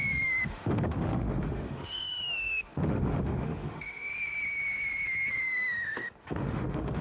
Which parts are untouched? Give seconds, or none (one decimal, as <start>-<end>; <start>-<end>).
4.1-5.3